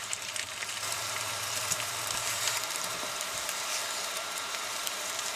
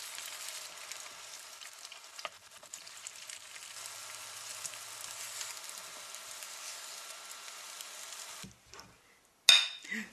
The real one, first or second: second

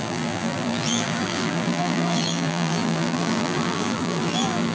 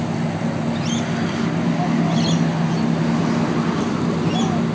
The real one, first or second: second